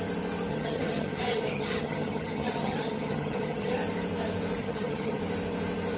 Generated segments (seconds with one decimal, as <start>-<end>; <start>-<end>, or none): 0.5-3.7; 4.6-5.2